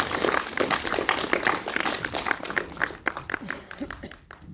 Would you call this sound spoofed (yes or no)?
no